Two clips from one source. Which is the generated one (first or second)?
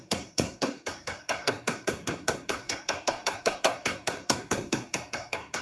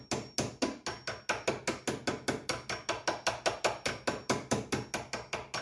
first